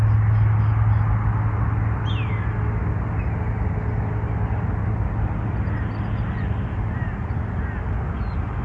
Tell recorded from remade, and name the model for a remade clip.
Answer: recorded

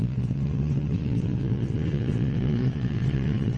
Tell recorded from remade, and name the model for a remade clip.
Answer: remade, vocoder, WaveNeXt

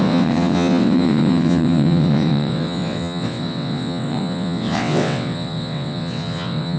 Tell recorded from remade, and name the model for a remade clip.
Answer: remade, vocoder, WaveNeXt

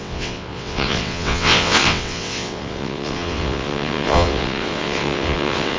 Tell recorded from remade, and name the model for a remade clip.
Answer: remade, vocoder, WaveNeXt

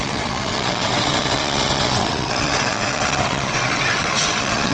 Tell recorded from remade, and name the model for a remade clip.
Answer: remade, vocoder, WaveNeXt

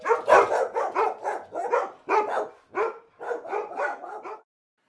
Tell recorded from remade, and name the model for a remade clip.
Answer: recorded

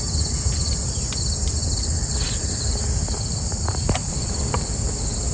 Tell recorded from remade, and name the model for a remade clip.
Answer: recorded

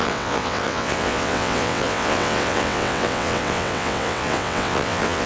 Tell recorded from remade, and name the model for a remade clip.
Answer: remade, vocoder, WaveNeXt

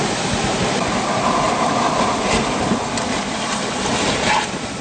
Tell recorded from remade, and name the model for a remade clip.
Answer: recorded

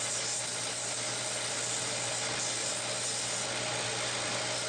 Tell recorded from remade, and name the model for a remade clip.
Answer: recorded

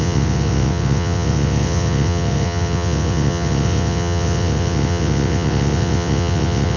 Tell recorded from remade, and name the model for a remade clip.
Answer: remade, vocoder, WaveNeXt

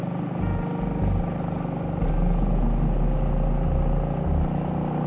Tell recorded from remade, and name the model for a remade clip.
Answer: recorded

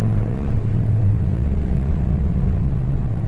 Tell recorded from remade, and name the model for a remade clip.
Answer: remade, vocoder, WaveNeXt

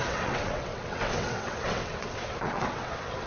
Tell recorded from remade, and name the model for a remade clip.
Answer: remade, vocoder, WaveNeXt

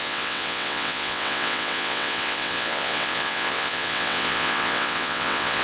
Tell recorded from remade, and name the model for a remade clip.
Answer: remade, vocoder, WaveNeXt